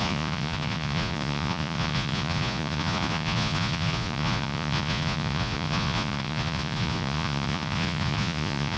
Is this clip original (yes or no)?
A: no